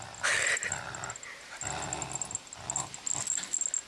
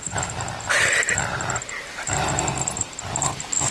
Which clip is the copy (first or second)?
second